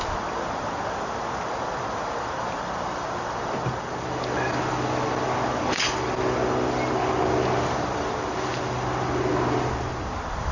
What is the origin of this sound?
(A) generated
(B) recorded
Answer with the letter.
A